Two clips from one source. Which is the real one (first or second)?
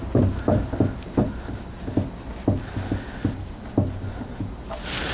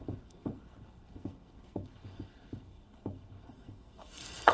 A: first